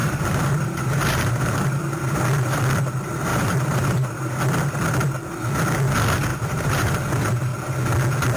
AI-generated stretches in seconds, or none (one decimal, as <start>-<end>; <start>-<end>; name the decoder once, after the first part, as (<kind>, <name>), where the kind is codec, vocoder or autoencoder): 0.0-2.2 (vocoder, BigVGAN v2); 3.3-4.3; 6.3-7.0